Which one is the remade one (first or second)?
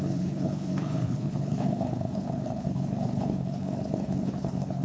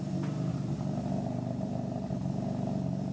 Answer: first